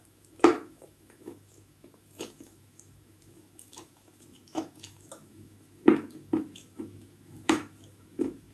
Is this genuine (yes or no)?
no